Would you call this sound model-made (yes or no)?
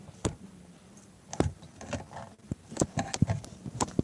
yes